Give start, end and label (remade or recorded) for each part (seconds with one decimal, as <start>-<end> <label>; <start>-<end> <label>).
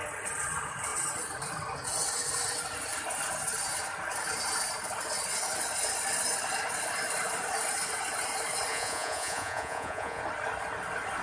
0.0-8.7 recorded; 8.7-10.2 remade; 10.2-11.2 recorded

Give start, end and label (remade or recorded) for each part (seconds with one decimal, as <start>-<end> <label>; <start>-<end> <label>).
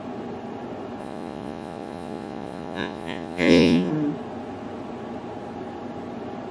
0.0-1.0 recorded; 1.0-3.9 remade; 3.9-6.5 recorded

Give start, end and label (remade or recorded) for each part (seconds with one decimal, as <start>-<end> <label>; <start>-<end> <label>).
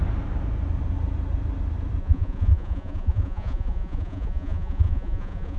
0.0-2.0 recorded; 2.0-5.6 remade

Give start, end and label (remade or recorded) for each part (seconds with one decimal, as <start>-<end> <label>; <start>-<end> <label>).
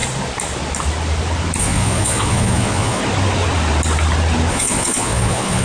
0.0-1.6 recorded; 1.6-3.0 remade; 3.0-4.5 recorded; 4.5-5.6 remade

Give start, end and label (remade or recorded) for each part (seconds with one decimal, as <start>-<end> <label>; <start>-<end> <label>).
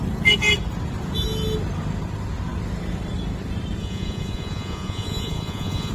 0.0-3.8 recorded; 3.8-5.9 remade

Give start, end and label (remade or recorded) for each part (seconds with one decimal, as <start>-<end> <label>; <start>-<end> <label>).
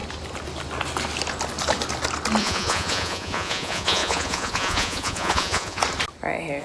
0.0-2.4 recorded; 2.4-5.8 remade; 5.8-6.6 recorded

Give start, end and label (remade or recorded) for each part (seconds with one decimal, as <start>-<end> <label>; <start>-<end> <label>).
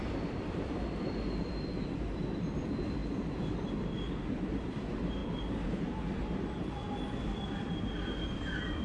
0.0-8.8 recorded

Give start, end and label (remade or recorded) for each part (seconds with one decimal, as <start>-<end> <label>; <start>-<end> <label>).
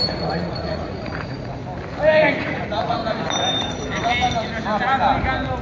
0.0-1.6 remade; 1.6-2.4 recorded; 2.4-3.0 remade; 3.0-5.6 recorded